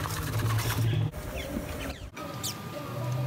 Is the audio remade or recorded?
recorded